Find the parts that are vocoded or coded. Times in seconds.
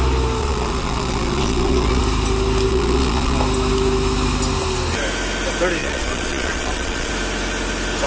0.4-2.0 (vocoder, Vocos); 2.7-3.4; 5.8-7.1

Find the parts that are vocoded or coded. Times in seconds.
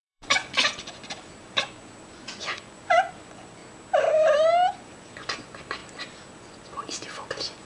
0.0-3.6 (vocoder, Vocos); 4.7-5.8; 6.3-7.7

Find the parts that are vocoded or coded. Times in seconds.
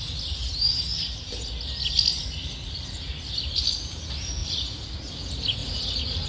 4.4-5.1 (vocoder, Vocos); 5.6-6.3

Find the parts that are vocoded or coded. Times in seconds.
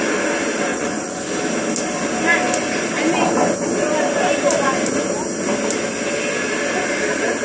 0.7-1.3 (vocoder, Vocos)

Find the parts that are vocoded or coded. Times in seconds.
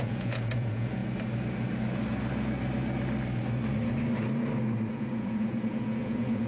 0.0-1.0 (vocoder, Vocos); 4.9-6.5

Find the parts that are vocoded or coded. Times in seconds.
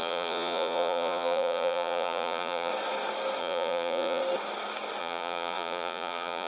0.0-2.7 (vocoder, Vocos); 3.4-4.2; 5.0-6.5